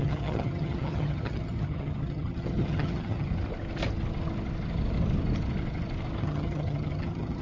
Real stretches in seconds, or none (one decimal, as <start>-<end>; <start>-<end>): 3.3-6.2